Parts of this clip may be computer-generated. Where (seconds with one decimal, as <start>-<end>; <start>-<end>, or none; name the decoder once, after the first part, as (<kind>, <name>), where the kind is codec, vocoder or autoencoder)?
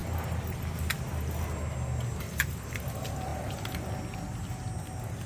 none